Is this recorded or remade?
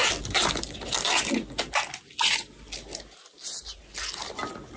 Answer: recorded